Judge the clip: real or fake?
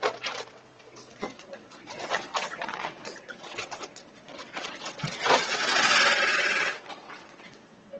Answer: fake